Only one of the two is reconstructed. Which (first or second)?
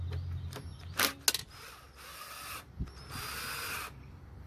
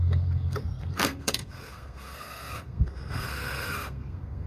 second